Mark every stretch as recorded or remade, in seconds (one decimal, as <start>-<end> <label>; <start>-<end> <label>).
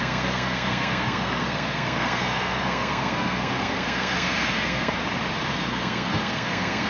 0.0-5.0 remade; 5.0-5.5 recorded; 5.5-6.9 remade